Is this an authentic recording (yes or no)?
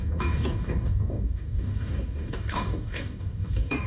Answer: no